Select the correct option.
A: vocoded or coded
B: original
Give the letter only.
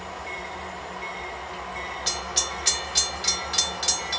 B